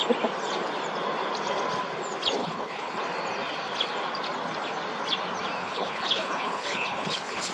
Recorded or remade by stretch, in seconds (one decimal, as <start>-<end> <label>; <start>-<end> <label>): 0.0-2.4 recorded; 2.4-3.0 remade; 3.0-5.6 recorded; 5.6-7.5 remade